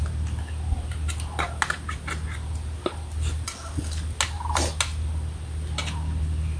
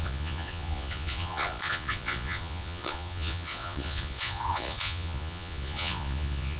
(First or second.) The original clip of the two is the first